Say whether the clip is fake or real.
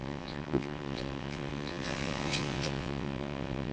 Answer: fake